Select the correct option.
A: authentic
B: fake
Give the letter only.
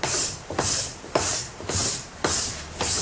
B